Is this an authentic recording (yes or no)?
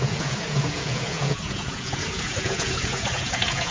no